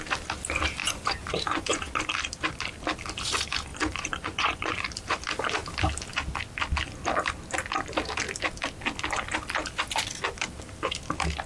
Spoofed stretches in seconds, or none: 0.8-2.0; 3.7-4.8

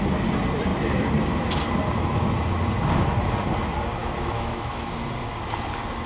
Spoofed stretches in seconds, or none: 4.0-4.9

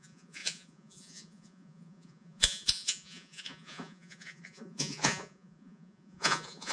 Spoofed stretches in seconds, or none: 0.0-6.7

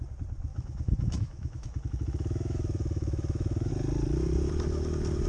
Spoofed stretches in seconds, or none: 0.5-3.7